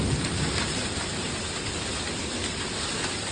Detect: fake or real real